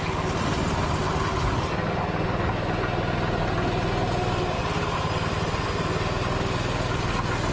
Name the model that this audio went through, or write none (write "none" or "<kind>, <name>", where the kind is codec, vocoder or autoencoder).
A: none